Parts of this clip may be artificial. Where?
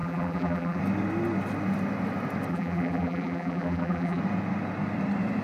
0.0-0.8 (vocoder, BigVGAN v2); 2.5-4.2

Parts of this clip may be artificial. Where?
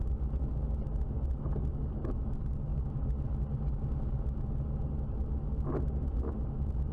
none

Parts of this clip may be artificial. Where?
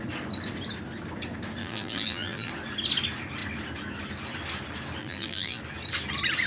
1.6-2.5 (vocoder, BigVGAN v2); 5.0-5.6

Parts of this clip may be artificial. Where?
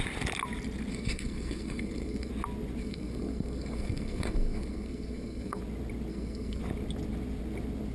0.9-2.3 (codec, SNAC); 2.8-5.6; 6.1-6.6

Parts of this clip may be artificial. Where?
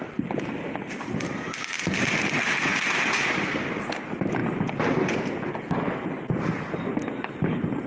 none